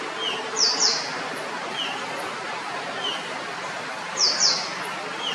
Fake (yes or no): no